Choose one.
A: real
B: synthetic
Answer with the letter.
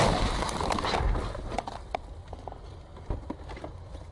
A